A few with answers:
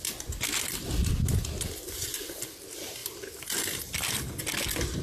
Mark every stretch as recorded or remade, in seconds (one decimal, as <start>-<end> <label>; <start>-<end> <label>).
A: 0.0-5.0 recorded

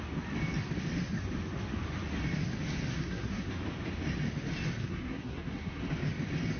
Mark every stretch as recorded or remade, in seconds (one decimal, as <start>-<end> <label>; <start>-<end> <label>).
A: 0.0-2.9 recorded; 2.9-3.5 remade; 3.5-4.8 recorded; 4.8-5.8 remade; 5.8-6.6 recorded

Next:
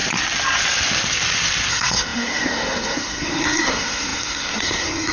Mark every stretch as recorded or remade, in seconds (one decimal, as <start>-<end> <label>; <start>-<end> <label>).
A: 0.0-1.7 recorded; 1.7-5.1 remade

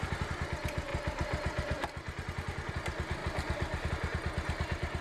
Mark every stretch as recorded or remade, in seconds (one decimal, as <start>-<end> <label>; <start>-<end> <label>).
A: 0.0-5.0 recorded